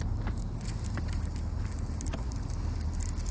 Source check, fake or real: real